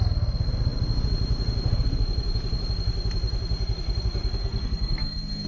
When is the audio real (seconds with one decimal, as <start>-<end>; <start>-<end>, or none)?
0.0-4.4